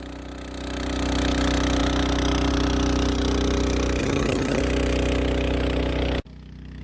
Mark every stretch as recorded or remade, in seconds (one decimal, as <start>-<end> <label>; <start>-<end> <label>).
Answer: 0.0-4.0 recorded; 4.0-4.6 remade; 4.6-6.8 recorded